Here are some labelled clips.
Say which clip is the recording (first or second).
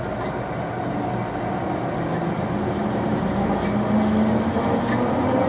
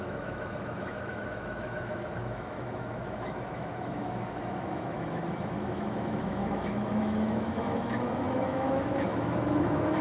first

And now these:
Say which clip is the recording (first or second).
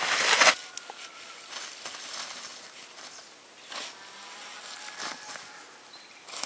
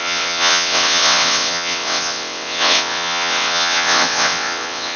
first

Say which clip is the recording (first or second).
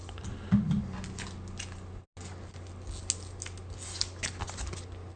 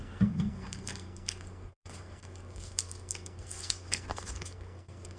first